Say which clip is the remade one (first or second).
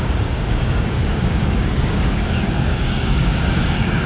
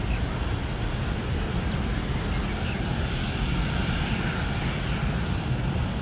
first